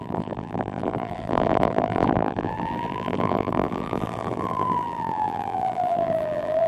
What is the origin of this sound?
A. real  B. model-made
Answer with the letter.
B